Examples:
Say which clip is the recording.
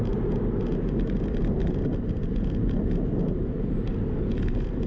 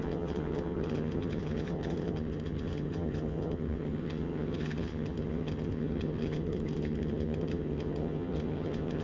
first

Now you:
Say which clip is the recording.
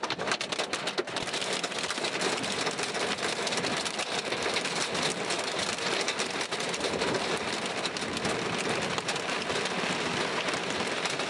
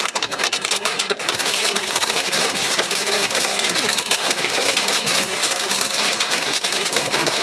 first